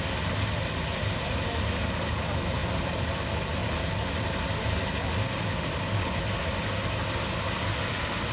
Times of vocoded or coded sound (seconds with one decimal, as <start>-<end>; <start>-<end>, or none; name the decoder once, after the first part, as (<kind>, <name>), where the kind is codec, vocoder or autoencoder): 2.6-3.1 (vocoder, BigVGAN v2); 3.6-4.3